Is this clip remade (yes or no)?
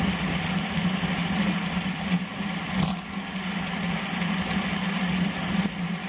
no